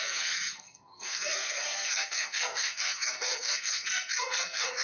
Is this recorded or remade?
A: remade